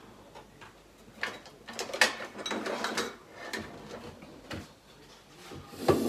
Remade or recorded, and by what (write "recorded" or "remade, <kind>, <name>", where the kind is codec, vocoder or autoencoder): recorded